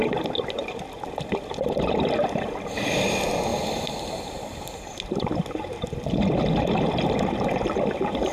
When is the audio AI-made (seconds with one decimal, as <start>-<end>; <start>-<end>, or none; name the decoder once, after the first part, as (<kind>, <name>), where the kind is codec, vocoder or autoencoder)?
0.0-0.9 (vocoder, BigVGAN v2); 3.5-7.9